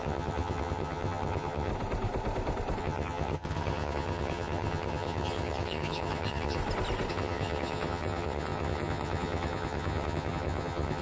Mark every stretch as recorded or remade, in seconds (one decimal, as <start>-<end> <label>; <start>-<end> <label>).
0.0-1.7 remade; 1.7-2.8 recorded; 2.8-6.6 remade; 6.6-7.1 recorded; 7.1-11.0 remade

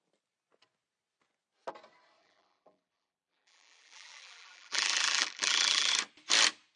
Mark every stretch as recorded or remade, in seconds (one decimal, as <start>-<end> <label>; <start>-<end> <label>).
0.0-2.2 recorded; 2.2-5.9 remade; 5.9-6.8 recorded

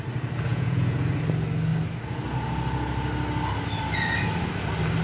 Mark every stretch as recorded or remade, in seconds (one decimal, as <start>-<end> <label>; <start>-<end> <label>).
0.0-0.5 recorded; 0.5-1.1 remade; 1.1-5.0 recorded

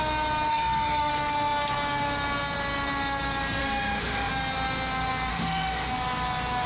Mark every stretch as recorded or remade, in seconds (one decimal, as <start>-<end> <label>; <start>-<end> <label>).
0.0-0.5 recorded; 0.5-1.1 remade; 1.1-3.6 recorded; 3.6-4.3 remade; 4.3-5.3 recorded; 5.3-5.9 remade; 5.9-6.7 recorded

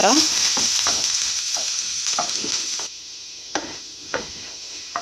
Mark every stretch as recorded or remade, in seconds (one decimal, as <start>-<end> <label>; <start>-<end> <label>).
0.0-5.0 remade

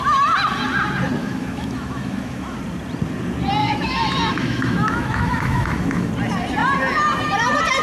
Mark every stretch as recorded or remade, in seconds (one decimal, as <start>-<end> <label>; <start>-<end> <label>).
0.0-1.2 recorded; 1.2-2.6 remade; 2.6-3.6 recorded; 3.6-6.1 remade; 6.1-7.8 recorded